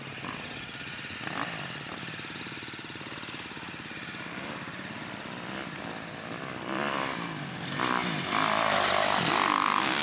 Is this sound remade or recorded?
recorded